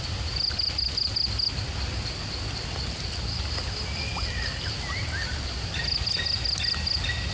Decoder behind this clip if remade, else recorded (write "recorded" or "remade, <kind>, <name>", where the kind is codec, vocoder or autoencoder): recorded